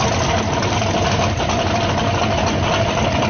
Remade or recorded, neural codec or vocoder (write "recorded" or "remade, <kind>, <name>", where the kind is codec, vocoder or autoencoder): recorded